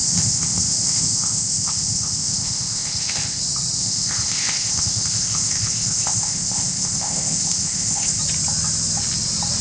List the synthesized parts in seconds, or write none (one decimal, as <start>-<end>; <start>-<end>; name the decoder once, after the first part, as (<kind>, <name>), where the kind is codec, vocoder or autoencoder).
0.0-3.4 (codec, ZipCodec); 3.8-8.2